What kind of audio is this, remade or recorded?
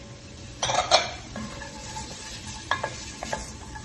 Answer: remade